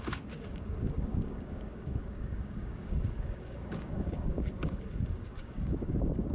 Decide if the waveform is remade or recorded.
remade